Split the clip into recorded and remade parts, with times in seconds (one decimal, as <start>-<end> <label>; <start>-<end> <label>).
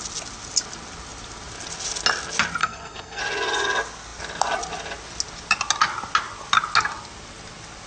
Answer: 0.0-2.6 recorded; 2.6-3.2 remade; 3.2-7.9 recorded